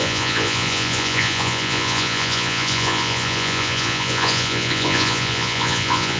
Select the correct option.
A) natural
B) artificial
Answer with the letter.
B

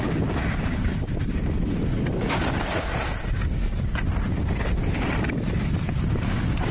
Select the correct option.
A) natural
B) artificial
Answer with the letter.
A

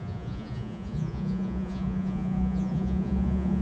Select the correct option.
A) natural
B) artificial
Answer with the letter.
B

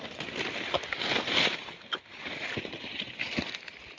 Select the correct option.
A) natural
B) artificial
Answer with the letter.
A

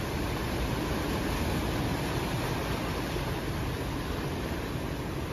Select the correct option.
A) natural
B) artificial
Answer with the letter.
A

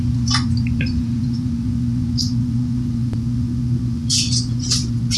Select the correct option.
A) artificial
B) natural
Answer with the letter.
A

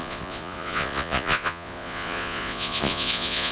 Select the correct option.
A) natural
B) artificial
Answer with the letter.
B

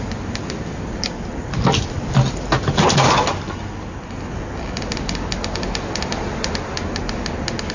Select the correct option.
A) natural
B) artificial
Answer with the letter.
A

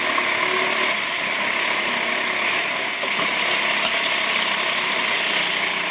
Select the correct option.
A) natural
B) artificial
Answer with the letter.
A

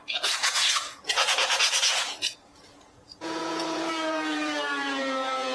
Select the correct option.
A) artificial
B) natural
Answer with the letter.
A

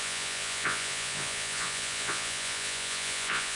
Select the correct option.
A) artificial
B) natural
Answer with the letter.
A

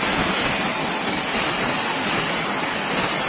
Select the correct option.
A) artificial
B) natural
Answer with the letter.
B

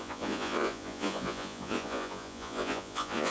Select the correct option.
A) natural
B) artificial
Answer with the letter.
B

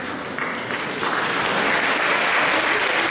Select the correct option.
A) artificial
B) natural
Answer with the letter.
B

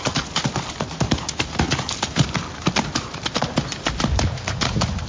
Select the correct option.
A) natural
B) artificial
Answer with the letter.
A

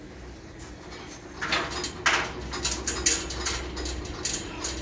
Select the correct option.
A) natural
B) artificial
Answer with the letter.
A